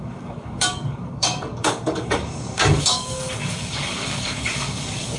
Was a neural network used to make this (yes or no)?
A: yes